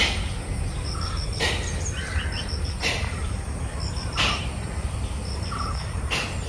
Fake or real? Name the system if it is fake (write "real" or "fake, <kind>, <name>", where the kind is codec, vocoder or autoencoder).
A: real